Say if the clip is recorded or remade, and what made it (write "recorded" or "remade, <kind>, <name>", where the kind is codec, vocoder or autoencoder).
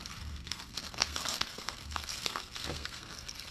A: remade, codec, SNAC